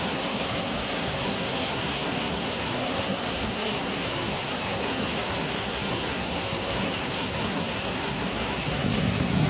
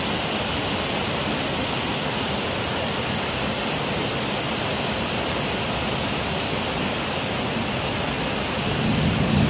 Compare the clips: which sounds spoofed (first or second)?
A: first